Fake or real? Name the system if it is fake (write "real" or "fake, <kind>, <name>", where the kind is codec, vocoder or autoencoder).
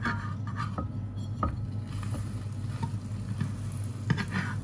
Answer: real